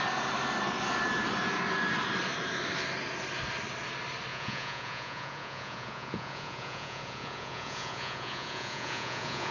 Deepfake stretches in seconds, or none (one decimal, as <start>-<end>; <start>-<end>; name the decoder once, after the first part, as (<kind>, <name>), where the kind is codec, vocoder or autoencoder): 4.3-9.5 (vocoder, Vocos)